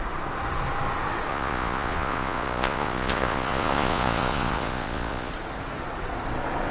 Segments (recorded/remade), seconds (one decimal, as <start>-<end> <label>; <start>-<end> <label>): 0.0-1.3 recorded; 1.3-5.3 remade; 5.3-6.7 recorded